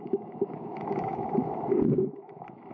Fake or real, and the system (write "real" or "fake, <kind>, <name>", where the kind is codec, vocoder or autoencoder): fake, autoencoder, DAC-VAE